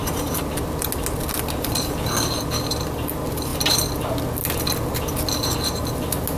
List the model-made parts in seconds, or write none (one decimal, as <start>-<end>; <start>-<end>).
none